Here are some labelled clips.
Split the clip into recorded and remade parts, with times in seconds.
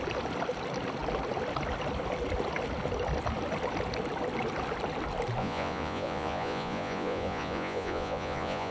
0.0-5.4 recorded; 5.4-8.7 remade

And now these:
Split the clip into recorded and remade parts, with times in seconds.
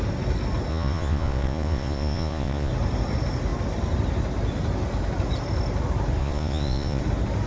0.0-0.7 recorded; 0.7-2.7 remade; 2.7-6.2 recorded; 6.2-7.0 remade; 7.0-7.5 recorded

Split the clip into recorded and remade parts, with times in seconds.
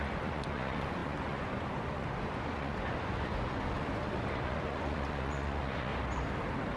0.0-5.9 remade; 5.9-6.8 recorded